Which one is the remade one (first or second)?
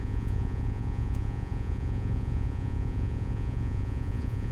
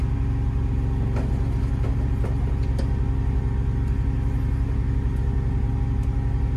first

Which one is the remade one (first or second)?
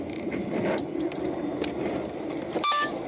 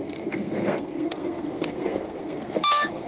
second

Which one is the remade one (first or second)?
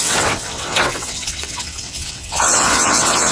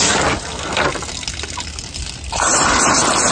first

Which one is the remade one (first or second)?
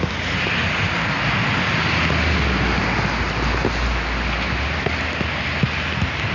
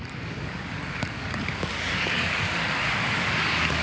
second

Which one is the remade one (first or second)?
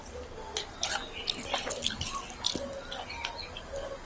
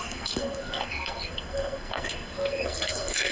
second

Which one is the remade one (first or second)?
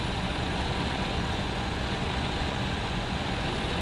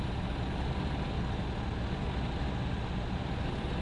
first